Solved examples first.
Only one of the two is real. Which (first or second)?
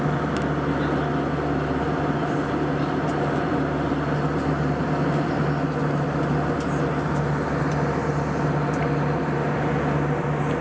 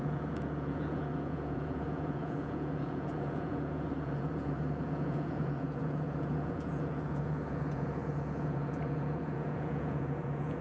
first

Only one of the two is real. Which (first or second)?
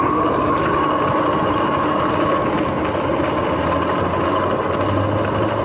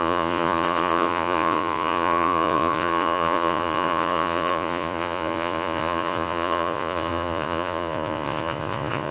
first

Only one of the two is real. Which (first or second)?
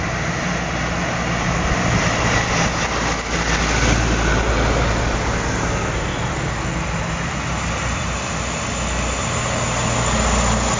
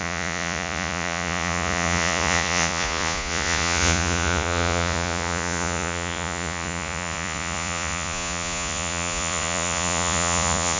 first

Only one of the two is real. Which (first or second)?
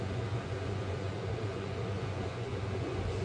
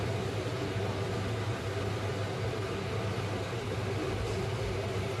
second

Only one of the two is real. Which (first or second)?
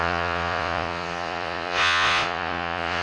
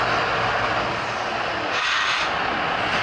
second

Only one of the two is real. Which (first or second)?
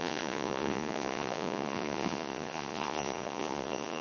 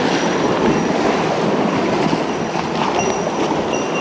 second